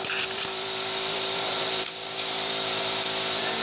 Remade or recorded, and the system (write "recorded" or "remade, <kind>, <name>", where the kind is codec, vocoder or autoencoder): remade, vocoder, BigVGAN v2